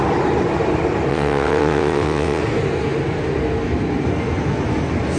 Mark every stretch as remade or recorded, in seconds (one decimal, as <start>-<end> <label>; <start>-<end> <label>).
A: 0.0-1.1 recorded; 1.1-2.4 remade; 2.4-5.2 recorded